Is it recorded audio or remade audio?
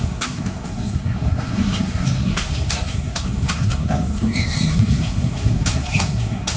remade